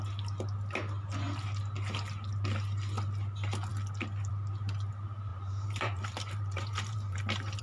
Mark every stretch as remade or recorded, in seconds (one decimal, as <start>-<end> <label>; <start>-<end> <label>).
0.0-5.3 recorded; 5.3-7.6 remade